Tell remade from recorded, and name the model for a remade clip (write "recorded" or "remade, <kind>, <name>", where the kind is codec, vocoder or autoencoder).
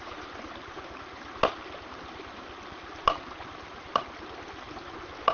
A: recorded